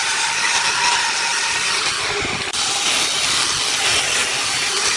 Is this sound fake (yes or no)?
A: no